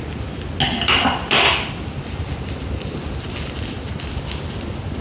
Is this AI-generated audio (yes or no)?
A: no